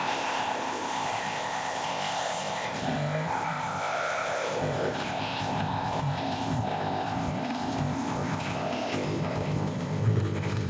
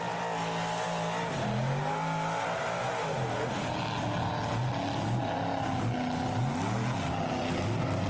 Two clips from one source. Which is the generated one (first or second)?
first